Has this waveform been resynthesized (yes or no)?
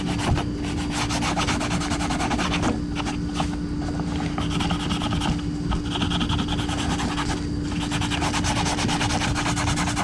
no